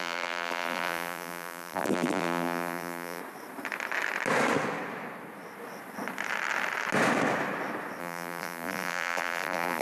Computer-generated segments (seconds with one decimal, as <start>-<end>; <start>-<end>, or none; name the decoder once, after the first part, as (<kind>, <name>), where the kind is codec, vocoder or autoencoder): 0.0-3.2 (vocoder, BigVGAN v2); 8.0-9.8